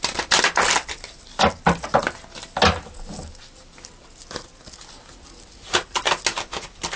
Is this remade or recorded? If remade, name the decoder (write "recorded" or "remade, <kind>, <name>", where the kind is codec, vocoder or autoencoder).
recorded